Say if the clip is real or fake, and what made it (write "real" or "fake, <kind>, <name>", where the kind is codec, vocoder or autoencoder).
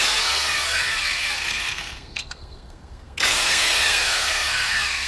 fake, codec, SNAC